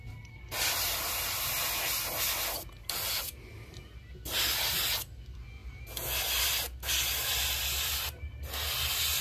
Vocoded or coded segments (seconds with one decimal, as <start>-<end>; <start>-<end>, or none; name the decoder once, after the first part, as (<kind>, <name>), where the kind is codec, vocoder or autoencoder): none